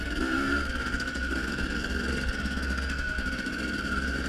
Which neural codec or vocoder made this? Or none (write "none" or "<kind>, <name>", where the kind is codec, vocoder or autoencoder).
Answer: codec, SNAC